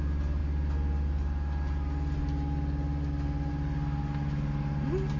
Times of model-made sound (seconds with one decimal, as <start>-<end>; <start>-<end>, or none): none